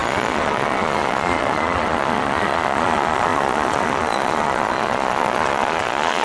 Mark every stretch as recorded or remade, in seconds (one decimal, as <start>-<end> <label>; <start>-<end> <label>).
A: 0.0-6.2 remade